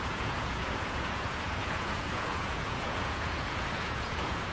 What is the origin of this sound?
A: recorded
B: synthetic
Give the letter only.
B